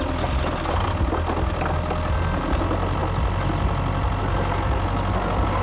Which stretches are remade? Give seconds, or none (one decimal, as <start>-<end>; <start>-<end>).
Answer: none